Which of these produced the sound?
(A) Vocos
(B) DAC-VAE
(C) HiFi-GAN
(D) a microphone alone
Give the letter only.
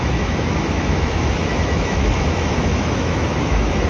B